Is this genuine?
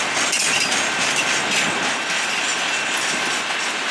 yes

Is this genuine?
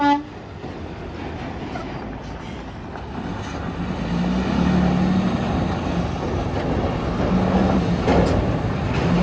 yes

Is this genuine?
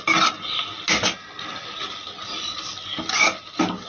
yes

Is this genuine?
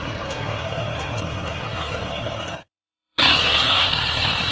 no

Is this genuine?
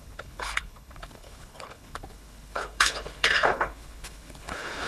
no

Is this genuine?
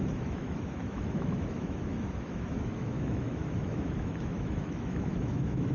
no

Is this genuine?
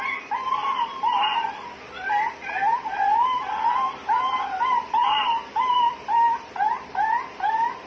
yes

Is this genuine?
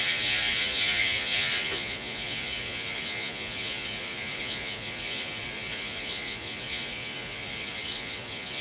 no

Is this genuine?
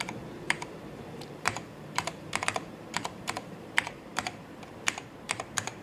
no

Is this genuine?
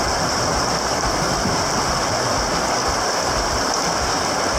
yes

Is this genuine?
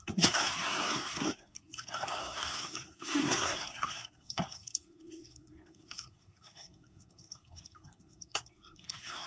no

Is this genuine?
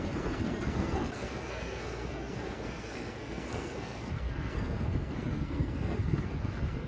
no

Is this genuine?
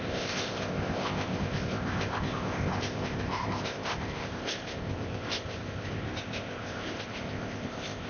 no